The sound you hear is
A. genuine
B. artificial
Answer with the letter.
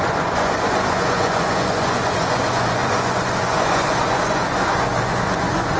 B